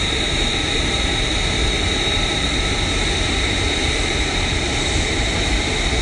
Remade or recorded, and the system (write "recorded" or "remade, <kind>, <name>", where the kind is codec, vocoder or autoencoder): remade, vocoder, BigVGAN v2